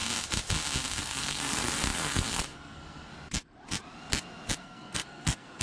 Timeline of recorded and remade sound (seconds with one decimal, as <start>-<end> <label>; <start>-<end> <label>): 0.0-1.0 recorded; 1.0-3.1 remade; 3.1-4.6 recorded; 4.6-5.6 remade